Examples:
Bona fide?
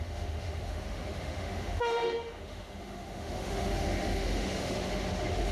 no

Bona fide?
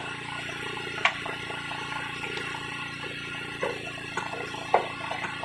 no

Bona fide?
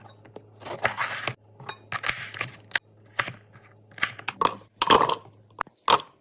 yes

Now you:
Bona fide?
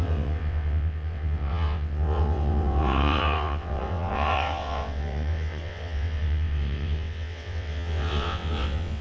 no